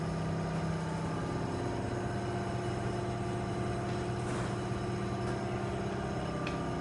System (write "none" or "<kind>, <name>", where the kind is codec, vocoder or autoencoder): none